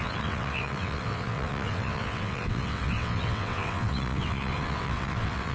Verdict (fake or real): fake